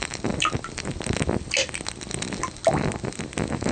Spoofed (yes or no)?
no